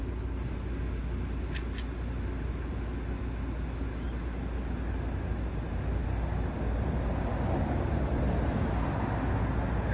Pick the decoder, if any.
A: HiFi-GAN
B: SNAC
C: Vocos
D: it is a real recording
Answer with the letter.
D